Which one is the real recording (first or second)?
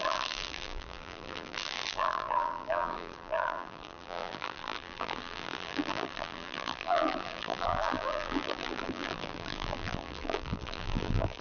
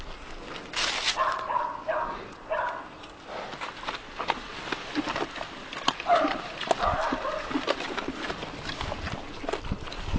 second